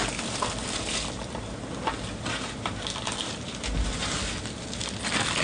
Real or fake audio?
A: real